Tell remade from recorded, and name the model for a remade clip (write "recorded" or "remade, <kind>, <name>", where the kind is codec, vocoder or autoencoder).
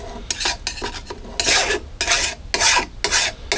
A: recorded